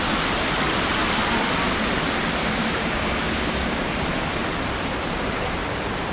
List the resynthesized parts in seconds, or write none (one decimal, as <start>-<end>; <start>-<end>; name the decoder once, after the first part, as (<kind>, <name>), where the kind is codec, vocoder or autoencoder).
2.4-3.8 (codec, DAC)